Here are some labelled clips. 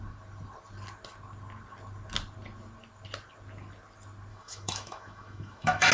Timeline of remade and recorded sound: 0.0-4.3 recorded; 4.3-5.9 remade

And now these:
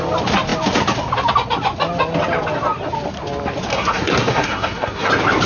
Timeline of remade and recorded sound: 0.0-3.7 recorded; 3.7-5.1 remade; 5.1-5.5 recorded